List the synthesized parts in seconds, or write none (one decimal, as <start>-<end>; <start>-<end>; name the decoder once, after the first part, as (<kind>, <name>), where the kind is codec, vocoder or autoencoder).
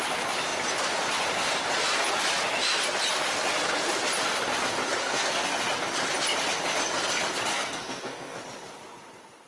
5.0-5.6 (codec, SNAC); 7.5-8.4